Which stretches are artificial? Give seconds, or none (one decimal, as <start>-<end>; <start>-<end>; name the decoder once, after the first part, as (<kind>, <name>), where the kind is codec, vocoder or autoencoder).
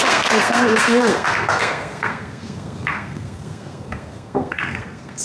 0.0-5.2 (codec, SNAC)